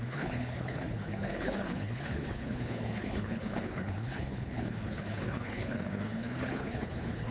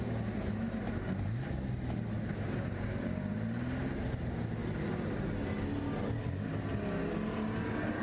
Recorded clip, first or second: second